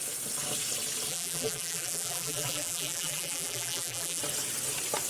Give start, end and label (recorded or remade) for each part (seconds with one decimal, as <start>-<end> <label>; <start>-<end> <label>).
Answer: 0.0-1.1 recorded; 1.1-4.2 remade; 4.2-5.1 recorded